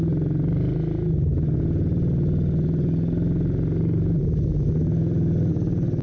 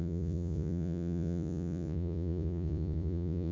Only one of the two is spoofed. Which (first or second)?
second